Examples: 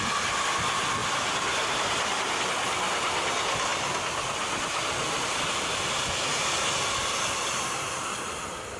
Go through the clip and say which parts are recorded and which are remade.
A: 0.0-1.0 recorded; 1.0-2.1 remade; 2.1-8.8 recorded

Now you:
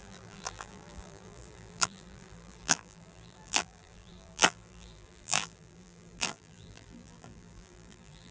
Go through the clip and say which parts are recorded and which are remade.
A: 0.0-8.3 remade

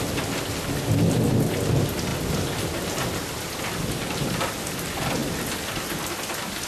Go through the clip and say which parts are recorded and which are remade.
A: 0.0-6.7 recorded

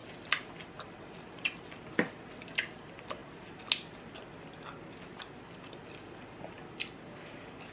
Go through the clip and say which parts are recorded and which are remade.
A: 0.0-7.7 recorded